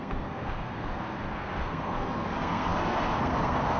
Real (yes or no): no